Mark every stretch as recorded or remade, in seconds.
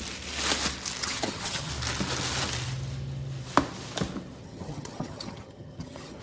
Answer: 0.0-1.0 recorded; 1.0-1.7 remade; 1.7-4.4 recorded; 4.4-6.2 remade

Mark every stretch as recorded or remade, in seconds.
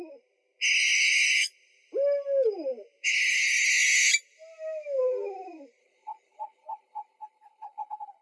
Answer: 0.0-5.8 recorded; 5.8-8.2 remade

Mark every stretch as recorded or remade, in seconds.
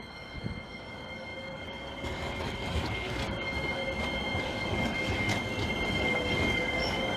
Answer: 0.0-3.8 remade; 3.8-4.4 recorded; 4.4-5.3 remade; 5.3-5.9 recorded; 5.9-7.2 remade